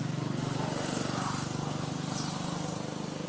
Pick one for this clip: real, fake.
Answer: real